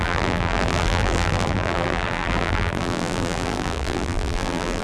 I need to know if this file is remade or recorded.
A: remade